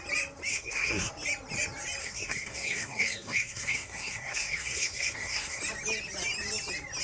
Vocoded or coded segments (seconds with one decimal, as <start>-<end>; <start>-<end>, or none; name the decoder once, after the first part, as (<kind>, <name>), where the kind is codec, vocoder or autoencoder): 0.5-1.1 (codec, SNAC); 2.0-5.6